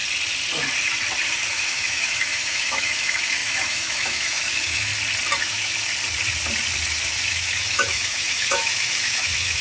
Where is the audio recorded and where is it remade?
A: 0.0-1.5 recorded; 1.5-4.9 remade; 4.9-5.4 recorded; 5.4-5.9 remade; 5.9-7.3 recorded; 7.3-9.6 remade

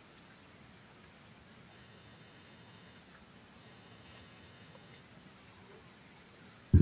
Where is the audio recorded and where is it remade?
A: 0.0-1.7 recorded; 1.7-3.0 remade; 3.0-3.6 recorded; 3.6-5.0 remade; 5.0-6.8 recorded